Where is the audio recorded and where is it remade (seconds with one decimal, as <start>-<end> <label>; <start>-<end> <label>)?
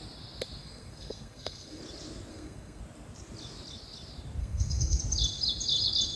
0.0-0.6 recorded; 0.6-1.8 remade; 1.8-2.3 recorded; 2.3-2.8 remade; 2.8-4.4 recorded; 4.4-5.0 remade; 5.0-6.2 recorded